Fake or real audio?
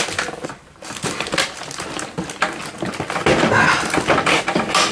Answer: real